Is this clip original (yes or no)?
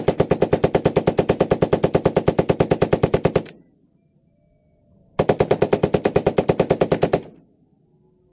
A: yes